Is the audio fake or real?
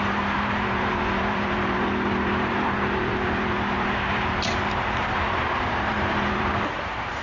fake